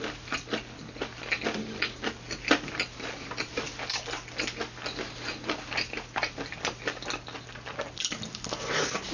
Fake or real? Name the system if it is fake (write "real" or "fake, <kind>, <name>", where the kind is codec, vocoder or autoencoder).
real